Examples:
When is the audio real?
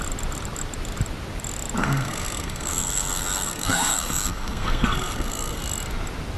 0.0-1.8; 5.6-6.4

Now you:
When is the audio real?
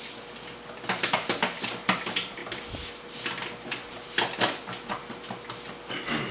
0.0-6.3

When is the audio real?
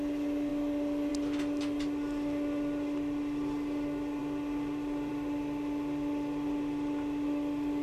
0.0-7.8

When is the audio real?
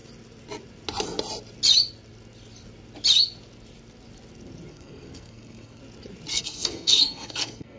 0.0-4.7; 5.8-6.3